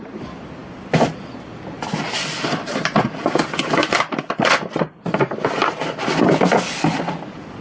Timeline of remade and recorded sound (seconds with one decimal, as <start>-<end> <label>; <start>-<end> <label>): 0.0-0.6 recorded; 0.6-3.3 remade; 3.3-3.8 recorded; 3.8-4.6 remade; 4.6-7.6 recorded